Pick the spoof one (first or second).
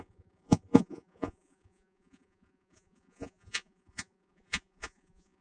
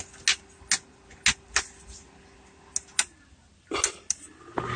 first